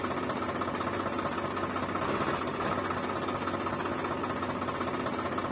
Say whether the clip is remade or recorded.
recorded